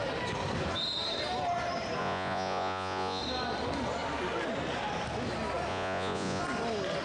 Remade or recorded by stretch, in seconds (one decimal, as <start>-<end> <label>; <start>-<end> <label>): 0.0-2.0 recorded; 2.0-3.2 remade; 3.2-5.7 recorded; 5.7-6.4 remade; 6.4-7.0 recorded